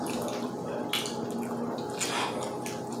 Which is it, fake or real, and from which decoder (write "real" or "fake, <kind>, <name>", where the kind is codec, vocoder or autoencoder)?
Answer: real